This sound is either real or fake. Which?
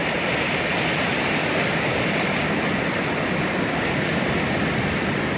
fake